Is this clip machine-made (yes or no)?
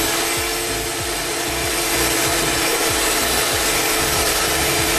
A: no